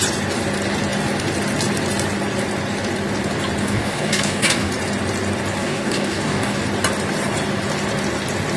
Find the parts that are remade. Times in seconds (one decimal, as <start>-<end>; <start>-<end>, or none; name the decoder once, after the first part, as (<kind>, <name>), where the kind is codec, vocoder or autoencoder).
3.6-4.7 (codec, DAC); 5.6-6.6